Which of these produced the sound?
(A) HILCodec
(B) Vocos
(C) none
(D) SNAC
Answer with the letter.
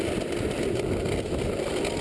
C